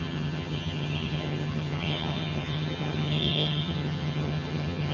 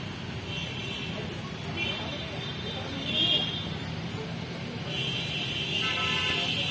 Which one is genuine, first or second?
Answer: second